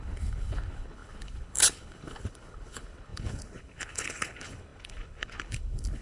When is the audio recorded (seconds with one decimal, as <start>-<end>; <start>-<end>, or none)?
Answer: none